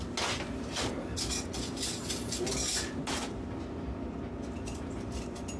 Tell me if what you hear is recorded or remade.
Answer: recorded